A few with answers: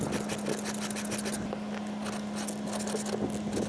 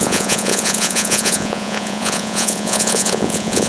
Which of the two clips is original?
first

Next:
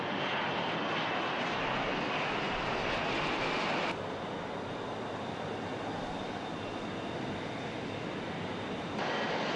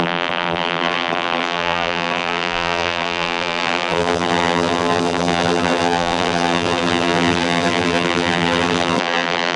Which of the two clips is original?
first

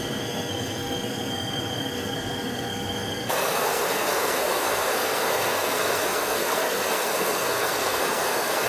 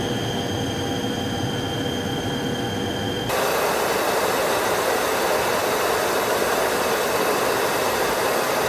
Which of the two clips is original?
second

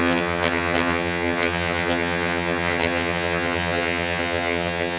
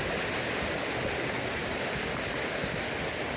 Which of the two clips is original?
second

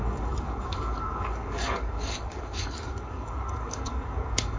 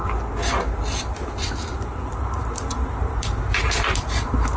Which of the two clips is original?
second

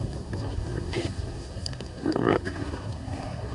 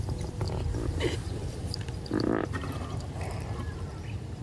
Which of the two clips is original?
second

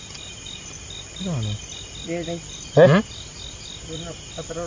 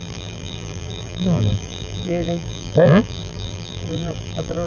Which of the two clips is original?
first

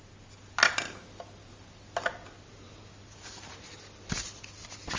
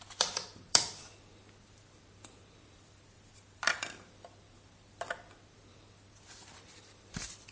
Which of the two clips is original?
first